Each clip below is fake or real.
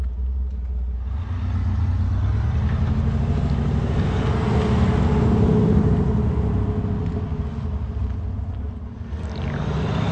real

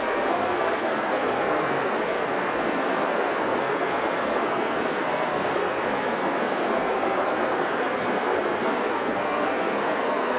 fake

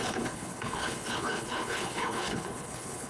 fake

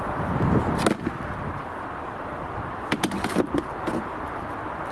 real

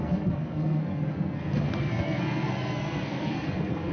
fake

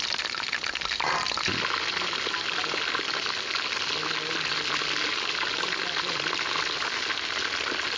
real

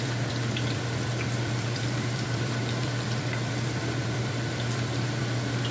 fake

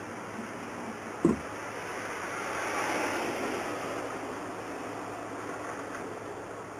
real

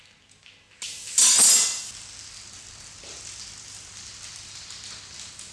real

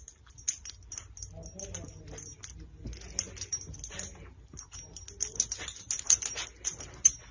real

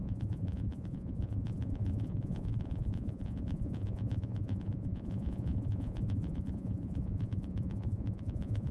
fake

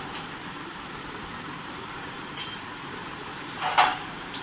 fake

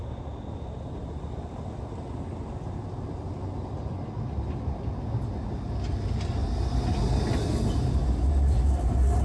real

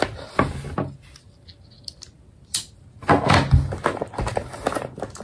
real